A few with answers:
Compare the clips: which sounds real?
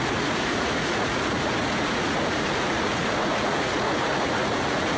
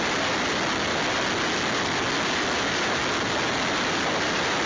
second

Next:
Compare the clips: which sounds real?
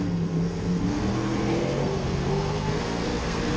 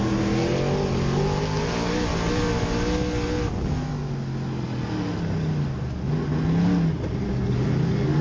second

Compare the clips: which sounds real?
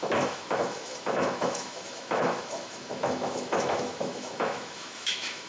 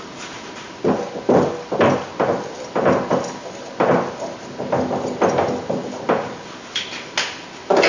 second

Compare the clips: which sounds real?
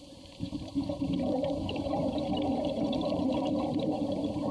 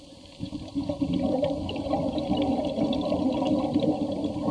second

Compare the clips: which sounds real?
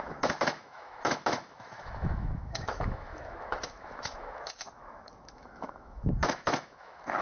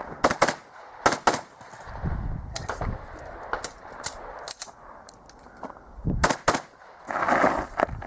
second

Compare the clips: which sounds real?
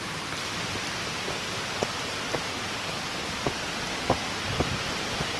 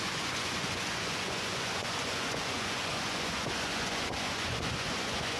first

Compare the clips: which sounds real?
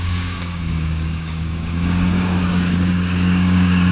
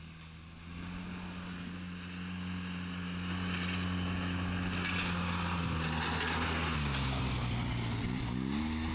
second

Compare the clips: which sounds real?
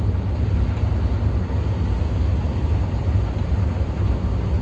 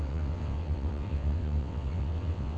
first